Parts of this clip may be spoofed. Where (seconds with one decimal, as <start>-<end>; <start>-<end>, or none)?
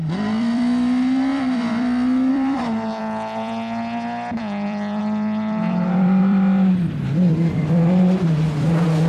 0.0-9.1